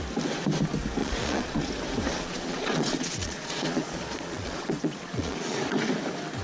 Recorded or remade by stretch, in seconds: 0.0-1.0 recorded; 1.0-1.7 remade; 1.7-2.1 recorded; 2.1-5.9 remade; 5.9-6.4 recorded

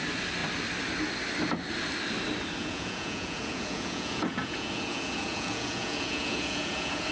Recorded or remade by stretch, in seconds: 0.0-2.6 recorded; 2.6-7.1 remade

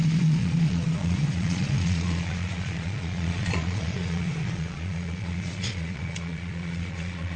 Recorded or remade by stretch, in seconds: 0.0-7.4 remade

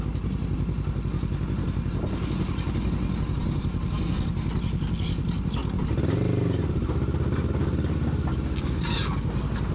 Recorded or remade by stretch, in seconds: 0.0-9.7 recorded

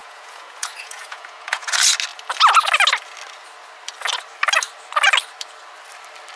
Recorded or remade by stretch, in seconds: 0.0-1.7 remade; 1.7-6.4 recorded

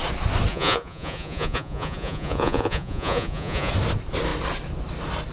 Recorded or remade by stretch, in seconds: 0.0-0.5 recorded; 0.5-3.7 remade; 3.7-5.3 recorded